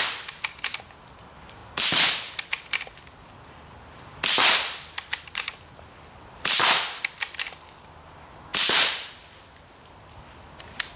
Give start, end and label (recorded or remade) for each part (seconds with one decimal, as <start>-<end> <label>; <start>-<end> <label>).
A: 0.0-8.5 recorded; 8.5-9.1 remade; 9.1-11.0 recorded